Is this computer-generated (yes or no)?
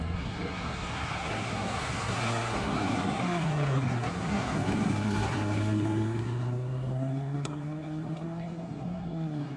yes